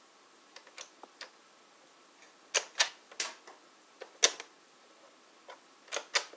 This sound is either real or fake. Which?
real